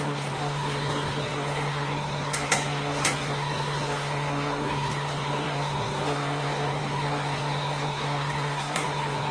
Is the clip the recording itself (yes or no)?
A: no